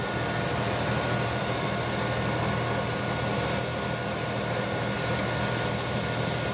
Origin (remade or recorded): recorded